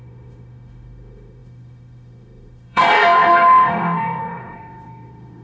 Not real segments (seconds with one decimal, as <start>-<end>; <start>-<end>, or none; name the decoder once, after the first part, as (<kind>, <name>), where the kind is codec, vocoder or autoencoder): 0.0-5.4 (autoencoder, DAC-VAE)